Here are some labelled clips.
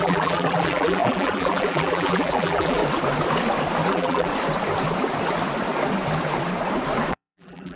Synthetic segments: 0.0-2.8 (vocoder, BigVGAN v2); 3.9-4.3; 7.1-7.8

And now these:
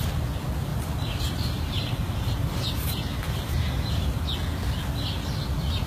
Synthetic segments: 0.7-4.2 (vocoder, BigVGAN v2)

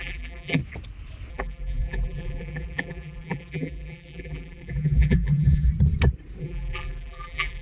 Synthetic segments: 0.0-0.6 (vocoder, BigVGAN v2); 1.3-5.7; 6.4-7.6

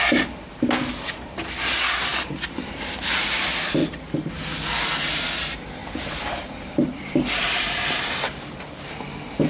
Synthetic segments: 2.1-2.8 (vocoder, BigVGAN v2); 3.8-4.3; 5.8-8.9